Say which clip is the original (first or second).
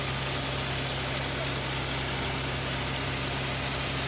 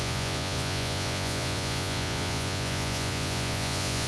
first